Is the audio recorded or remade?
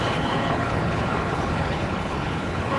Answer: remade